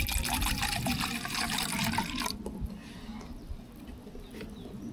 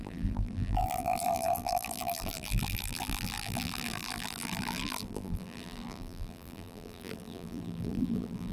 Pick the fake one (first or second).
second